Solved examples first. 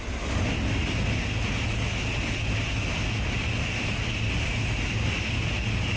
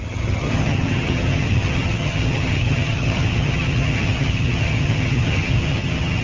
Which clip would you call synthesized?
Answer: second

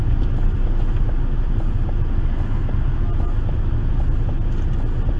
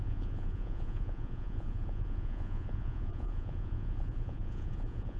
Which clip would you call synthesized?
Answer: second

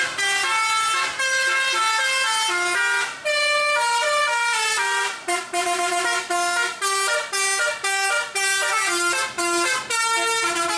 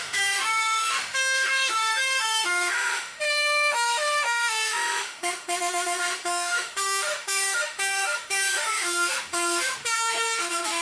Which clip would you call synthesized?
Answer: second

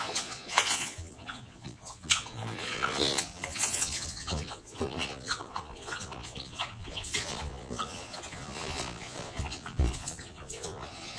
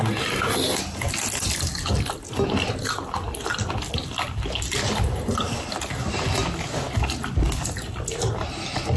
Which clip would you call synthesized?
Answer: first